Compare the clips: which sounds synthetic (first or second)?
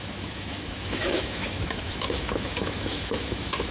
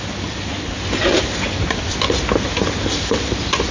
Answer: first